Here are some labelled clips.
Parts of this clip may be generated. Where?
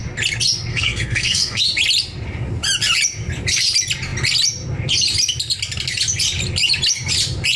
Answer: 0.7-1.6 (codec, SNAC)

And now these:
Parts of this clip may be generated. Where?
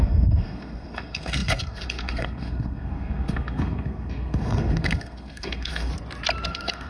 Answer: 0.0-5.9 (codec, SNAC); 6.5-6.9